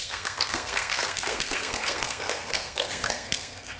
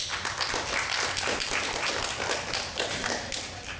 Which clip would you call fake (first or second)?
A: first